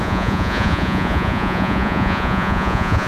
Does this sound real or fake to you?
fake